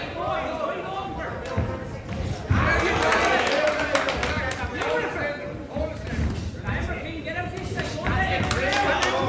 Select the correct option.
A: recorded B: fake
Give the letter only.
A